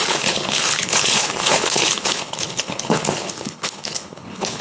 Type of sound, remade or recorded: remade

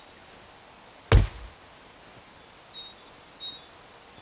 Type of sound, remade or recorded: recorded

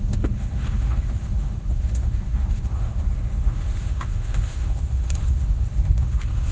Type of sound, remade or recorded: remade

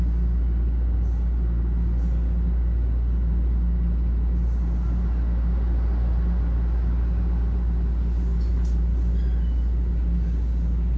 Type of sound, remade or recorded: recorded